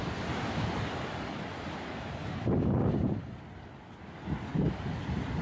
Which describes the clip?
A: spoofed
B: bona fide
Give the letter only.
B